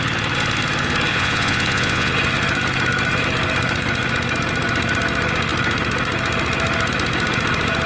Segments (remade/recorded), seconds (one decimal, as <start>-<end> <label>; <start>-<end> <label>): 0.0-1.1 recorded; 1.1-2.1 remade; 2.1-7.9 recorded